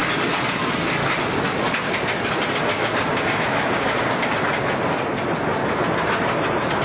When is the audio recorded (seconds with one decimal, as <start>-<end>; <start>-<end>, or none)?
0.0-2.7; 4.2-6.8